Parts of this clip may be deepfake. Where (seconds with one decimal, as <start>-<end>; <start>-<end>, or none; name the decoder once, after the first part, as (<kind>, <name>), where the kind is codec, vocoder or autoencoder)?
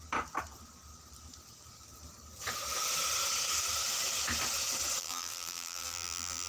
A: 5.0-6.5 (vocoder, BigVGAN v2)